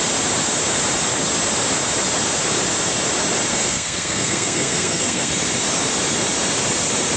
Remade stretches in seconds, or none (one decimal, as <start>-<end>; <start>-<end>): 3.5-5.3